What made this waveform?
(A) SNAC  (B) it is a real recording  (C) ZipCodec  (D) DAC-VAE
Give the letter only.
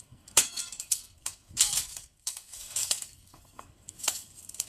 A